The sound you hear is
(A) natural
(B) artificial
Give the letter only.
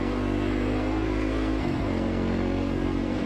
B